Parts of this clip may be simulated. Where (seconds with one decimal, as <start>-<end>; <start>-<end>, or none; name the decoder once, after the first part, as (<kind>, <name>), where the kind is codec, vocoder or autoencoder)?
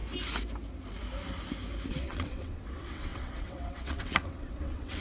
1.9-5.0 (vocoder, WaveNeXt)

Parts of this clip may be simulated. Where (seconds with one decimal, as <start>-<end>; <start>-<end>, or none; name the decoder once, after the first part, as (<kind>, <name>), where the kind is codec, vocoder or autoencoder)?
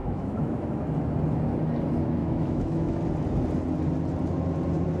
0.0-0.8 (autoencoder, DAC-VAE); 2.2-3.0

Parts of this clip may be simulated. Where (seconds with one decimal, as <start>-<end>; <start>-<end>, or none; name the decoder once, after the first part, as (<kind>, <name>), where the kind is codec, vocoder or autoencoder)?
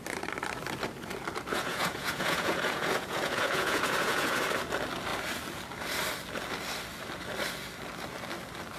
1.5-4.4 (vocoder, Vocos)